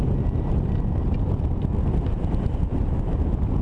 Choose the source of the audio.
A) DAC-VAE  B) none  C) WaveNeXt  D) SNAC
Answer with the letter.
B